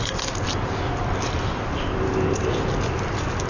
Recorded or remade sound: recorded